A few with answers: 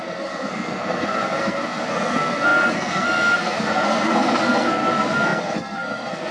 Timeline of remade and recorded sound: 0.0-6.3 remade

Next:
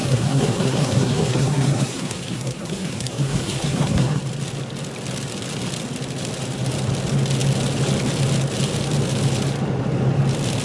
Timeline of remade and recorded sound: 0.0-4.2 remade; 4.2-10.6 recorded